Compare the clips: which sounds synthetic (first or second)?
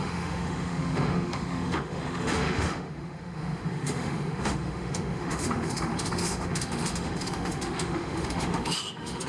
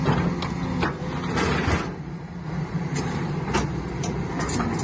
first